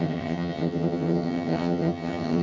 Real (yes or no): no